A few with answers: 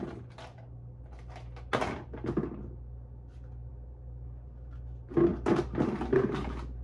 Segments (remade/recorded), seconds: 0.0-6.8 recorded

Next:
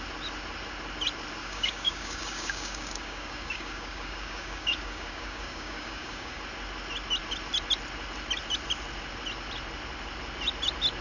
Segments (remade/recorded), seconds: 0.0-1.4 recorded; 1.4-6.4 remade; 6.4-11.0 recorded

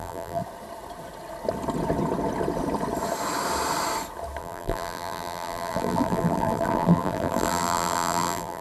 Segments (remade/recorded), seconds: 0.0-0.4 remade; 0.4-4.4 recorded; 4.4-8.6 remade

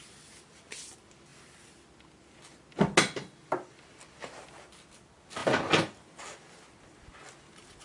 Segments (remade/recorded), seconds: 0.0-7.8 recorded

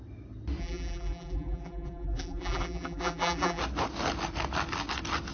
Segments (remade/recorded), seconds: 0.0-0.6 recorded; 0.6-3.6 remade; 3.6-5.3 recorded

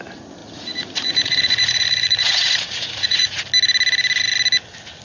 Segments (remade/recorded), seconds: 0.0-0.4 recorded; 0.4-3.4 remade; 3.4-5.0 recorded

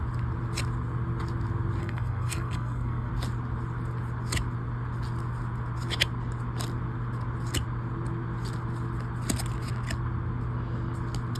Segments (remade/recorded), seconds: 0.0-1.8 recorded; 1.8-3.1 remade; 3.1-11.4 recorded

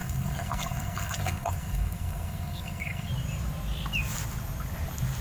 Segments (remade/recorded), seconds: 0.0-3.1 remade; 3.1-5.2 recorded